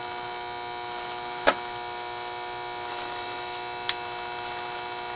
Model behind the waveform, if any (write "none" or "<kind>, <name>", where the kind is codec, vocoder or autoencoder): none